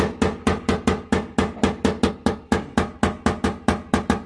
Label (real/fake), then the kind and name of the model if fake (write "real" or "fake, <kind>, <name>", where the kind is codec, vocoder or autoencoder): real